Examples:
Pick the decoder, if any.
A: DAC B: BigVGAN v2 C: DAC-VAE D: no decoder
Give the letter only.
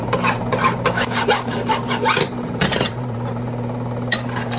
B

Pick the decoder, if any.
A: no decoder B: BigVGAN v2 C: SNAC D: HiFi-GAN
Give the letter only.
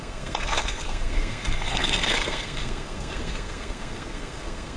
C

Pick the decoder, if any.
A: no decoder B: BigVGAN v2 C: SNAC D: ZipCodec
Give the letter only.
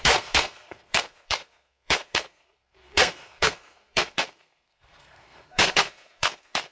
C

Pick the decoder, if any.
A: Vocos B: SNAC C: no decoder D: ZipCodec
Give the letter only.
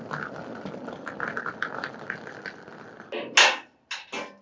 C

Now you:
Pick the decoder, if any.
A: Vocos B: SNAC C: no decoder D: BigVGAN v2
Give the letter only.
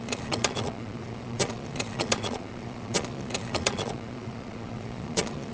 A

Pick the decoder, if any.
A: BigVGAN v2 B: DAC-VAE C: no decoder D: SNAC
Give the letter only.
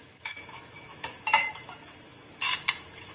B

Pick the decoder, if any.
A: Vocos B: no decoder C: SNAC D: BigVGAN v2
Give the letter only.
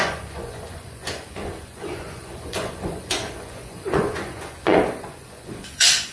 A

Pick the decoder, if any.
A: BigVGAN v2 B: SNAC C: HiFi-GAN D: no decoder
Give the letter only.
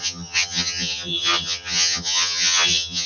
C